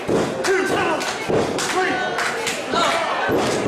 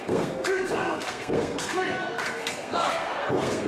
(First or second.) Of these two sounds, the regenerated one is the second